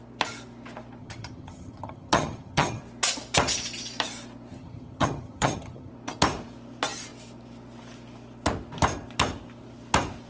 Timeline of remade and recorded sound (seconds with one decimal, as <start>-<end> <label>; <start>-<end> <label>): 0.0-1.0 recorded; 1.0-2.8 remade; 2.8-4.5 recorded; 4.5-5.9 remade; 5.9-10.3 recorded

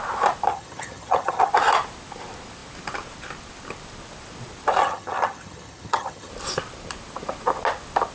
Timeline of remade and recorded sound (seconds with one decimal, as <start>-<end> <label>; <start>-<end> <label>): 0.0-0.5 recorded; 0.5-1.5 remade; 1.5-4.8 recorded; 4.8-6.3 remade; 6.3-8.1 recorded